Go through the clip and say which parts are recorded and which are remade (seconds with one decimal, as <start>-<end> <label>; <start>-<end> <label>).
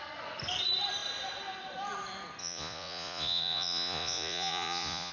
0.0-2.4 recorded; 2.4-5.1 remade